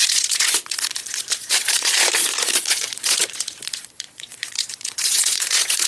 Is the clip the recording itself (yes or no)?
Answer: no